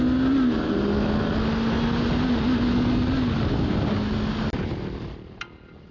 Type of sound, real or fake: real